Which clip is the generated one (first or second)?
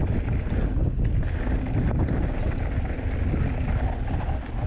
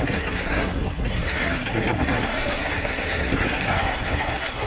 second